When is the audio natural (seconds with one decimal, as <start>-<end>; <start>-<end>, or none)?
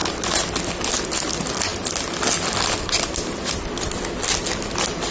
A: 0.0-5.1